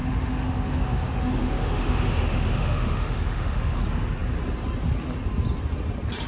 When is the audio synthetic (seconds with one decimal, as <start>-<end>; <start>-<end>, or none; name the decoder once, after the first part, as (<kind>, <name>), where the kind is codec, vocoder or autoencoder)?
0.0-3.8 (autoencoder, DAC-VAE)